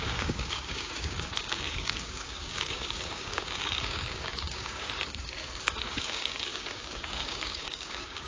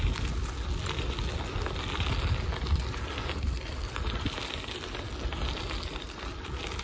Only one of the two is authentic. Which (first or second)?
second